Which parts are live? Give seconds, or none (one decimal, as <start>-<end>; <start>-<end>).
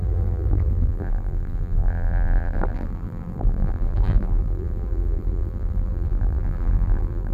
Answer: none